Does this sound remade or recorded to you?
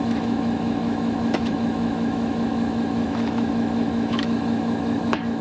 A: remade